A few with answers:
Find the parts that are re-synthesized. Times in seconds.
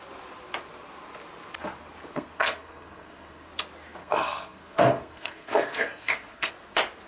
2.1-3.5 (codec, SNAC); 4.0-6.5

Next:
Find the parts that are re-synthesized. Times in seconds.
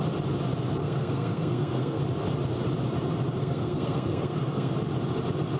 0.8-2.0 (codec, SNAC); 3.4-4.7